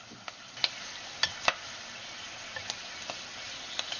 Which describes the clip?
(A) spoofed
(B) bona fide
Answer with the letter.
B